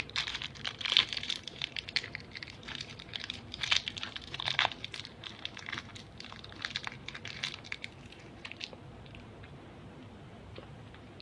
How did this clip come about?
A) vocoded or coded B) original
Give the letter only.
A